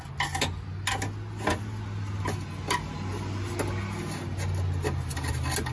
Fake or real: real